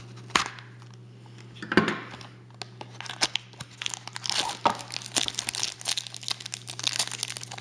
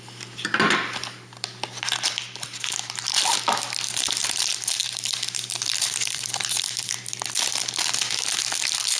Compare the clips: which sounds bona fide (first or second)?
first